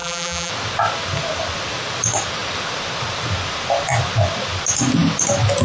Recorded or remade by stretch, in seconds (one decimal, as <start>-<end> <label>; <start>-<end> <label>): 0.0-0.5 remade; 0.5-5.6 recorded